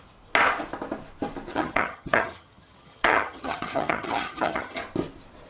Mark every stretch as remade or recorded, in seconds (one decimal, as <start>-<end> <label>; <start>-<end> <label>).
0.0-1.5 recorded; 1.5-4.8 remade; 4.8-5.5 recorded